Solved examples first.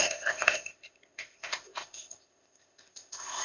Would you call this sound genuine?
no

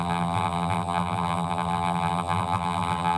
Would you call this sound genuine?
no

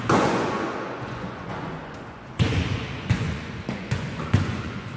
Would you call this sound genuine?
no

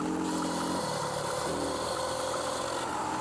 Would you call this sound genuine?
yes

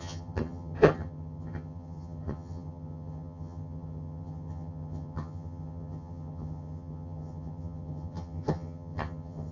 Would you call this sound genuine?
no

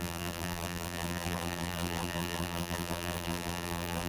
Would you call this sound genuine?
no